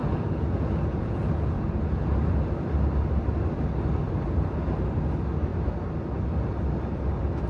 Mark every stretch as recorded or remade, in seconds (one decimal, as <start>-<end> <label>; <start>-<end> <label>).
0.0-2.3 remade; 2.3-7.5 recorded